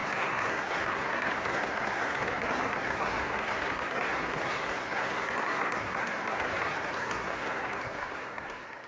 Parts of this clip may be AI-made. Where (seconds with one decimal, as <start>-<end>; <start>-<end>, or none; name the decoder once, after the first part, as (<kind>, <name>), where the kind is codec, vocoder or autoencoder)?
0.0-8.9 (codec, SNAC)